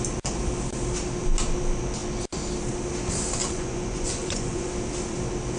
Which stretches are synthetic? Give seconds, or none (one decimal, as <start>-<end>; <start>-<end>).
3.4-4.7